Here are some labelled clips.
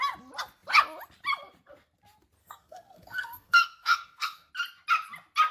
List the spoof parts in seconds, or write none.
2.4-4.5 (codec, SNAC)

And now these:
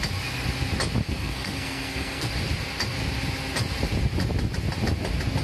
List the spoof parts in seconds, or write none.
1.0-2.3 (codec, SNAC)

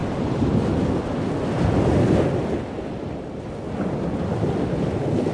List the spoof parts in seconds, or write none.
none